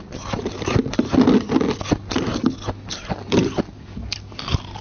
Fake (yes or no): no